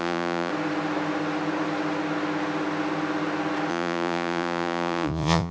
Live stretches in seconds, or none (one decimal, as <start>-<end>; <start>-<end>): 0.5-3.7